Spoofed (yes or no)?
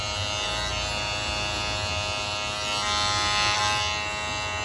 no